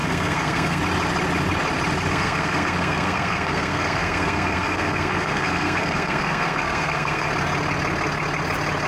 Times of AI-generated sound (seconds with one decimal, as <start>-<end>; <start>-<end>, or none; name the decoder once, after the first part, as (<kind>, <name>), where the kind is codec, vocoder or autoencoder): 0.0-0.8 (codec, SNAC); 2.1-7.3